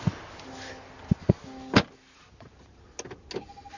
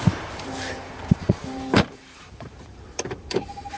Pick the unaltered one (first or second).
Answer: first